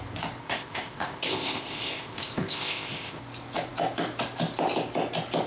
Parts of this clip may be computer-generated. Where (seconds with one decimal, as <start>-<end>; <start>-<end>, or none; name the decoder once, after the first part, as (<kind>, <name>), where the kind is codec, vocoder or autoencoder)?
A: 0.4-3.2 (codec, ZipCodec)